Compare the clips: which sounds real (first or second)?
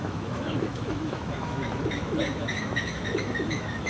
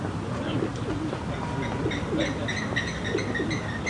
second